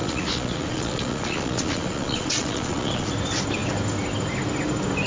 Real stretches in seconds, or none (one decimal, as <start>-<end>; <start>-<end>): 3.1-5.1